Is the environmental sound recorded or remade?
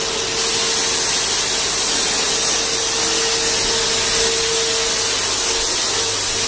recorded